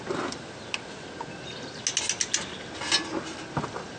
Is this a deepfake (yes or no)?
no